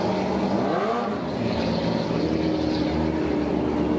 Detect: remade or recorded recorded